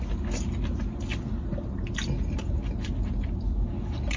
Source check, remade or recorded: recorded